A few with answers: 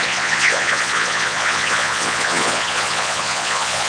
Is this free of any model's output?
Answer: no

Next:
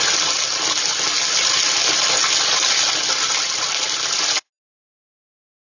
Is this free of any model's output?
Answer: yes